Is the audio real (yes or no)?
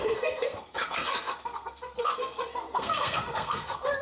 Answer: no